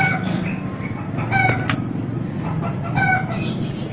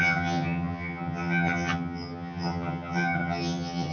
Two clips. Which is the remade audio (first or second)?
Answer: second